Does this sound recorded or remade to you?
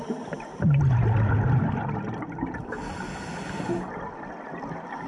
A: recorded